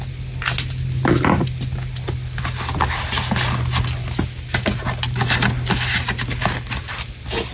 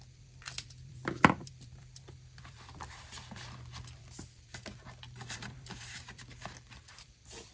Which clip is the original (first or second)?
first